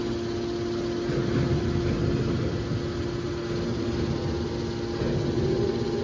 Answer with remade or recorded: recorded